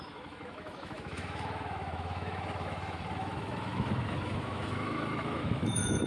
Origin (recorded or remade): remade